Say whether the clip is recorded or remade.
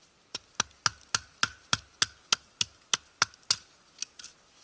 recorded